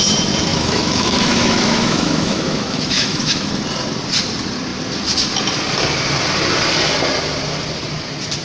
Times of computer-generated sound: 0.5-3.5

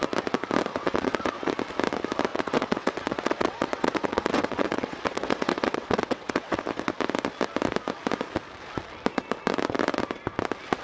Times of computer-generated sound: 0.7-1.5; 2.3-6.6

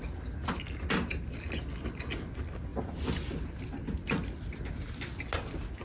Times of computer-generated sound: none

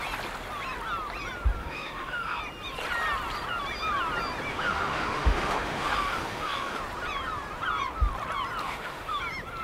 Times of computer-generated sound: 1.6-2.4; 4.5-6.8; 8.6-9.2

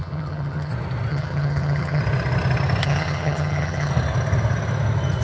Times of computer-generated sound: 0.0-0.7; 1.1-2.0; 2.8-3.9

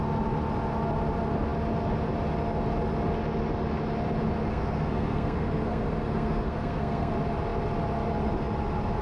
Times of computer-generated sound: 4.5-7.1

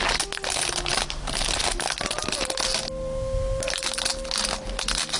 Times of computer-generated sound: none